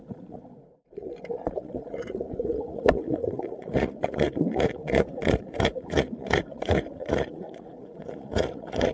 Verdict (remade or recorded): remade